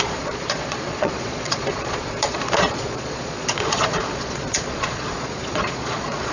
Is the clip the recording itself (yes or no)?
no